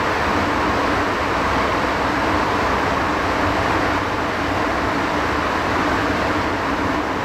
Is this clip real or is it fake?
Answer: real